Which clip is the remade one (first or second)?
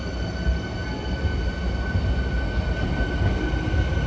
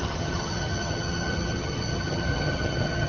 second